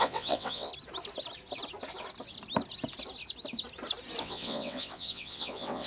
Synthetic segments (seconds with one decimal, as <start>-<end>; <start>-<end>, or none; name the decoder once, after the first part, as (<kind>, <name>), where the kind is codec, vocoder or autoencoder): 0.0-0.7 (vocoder, WaveNeXt); 4.2-5.9